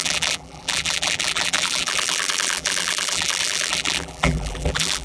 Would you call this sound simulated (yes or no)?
yes